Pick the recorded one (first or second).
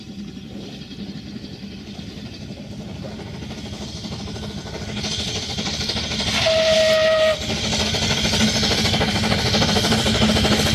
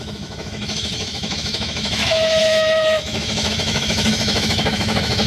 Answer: first